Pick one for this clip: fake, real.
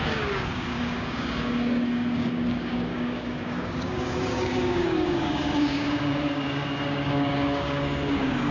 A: fake